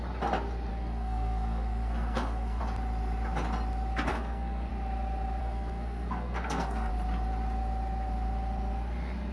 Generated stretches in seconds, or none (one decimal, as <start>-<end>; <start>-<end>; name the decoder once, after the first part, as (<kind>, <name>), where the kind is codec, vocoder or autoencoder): 0.7-2.6 (codec, SNAC); 4.1-4.7; 5.4-6.9

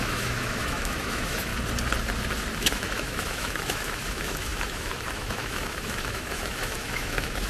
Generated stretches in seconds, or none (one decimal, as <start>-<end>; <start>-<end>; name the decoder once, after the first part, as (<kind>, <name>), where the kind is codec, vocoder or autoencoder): 0.0-1.5 (autoencoder, DAC-VAE); 2.6-7.5

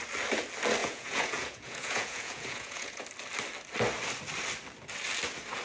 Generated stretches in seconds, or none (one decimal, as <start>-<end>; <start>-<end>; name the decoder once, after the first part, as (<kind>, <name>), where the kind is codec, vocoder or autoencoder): 0.8-3.0 (vocoder, Vocos)

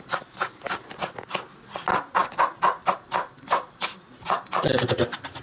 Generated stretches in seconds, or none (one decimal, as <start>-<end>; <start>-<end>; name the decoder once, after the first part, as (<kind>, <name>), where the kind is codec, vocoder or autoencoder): none

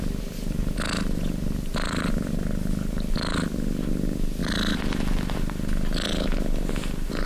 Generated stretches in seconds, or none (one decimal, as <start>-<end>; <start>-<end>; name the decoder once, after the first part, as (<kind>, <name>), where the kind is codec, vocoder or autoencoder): none

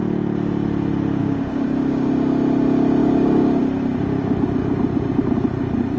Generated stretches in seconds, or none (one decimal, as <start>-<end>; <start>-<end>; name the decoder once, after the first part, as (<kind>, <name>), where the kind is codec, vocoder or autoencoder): 1.2-2.1 (codec, DAC); 3.0-3.6

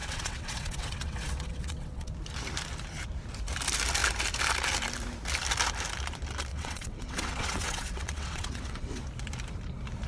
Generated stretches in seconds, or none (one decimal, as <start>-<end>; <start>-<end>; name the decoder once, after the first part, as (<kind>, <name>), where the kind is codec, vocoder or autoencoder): 0.0-2.1 (vocoder, WaveNeXt); 6.5-9.0

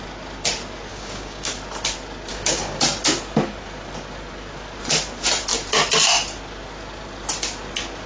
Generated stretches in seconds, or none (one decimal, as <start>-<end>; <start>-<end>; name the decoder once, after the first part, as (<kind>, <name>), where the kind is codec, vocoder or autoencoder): 0.9-1.5 (codec, DAC); 2.3-2.8